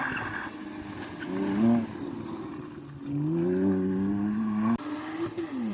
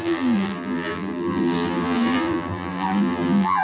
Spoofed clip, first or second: second